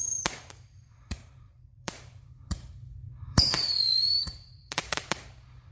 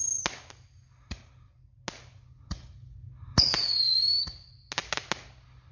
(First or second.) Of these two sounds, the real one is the second